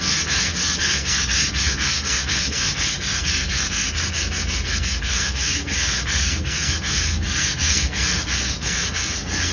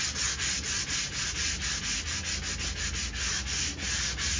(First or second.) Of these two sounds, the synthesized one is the first